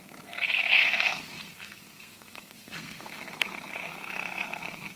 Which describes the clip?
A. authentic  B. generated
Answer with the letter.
B